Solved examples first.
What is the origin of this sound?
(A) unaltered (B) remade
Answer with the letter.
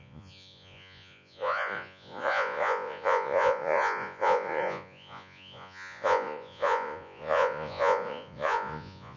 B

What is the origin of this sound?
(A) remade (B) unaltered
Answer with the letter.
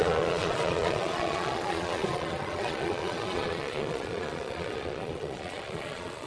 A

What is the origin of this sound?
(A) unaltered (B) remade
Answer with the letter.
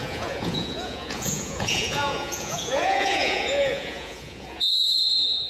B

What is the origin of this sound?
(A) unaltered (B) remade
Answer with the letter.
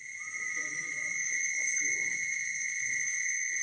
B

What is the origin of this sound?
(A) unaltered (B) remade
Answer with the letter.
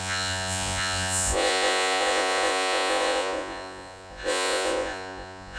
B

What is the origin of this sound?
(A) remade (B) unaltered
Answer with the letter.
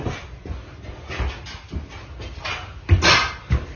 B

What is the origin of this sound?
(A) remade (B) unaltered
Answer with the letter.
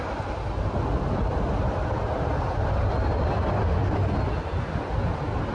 B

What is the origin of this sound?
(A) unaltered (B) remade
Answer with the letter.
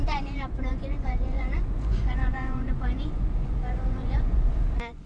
B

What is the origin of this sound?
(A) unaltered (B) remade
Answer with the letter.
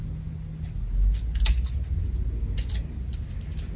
A